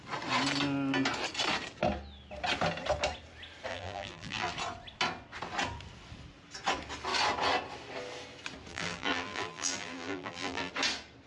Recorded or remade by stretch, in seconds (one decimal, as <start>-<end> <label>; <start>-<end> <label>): 0.0-3.7 recorded; 3.7-4.5 remade; 4.5-8.7 recorded; 8.7-10.7 remade; 10.7-11.3 recorded